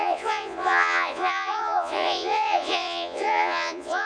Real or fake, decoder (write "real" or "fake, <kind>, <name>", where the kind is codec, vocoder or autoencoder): fake, vocoder, Vocos